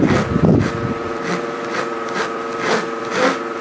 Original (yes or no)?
no